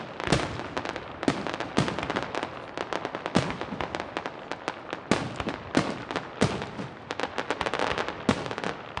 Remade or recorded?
recorded